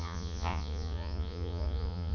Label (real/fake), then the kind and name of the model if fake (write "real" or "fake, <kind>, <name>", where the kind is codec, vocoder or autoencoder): fake, vocoder, Vocos